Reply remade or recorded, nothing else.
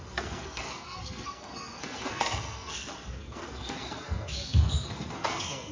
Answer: remade